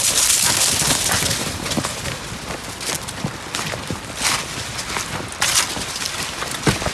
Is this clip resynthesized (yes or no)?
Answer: no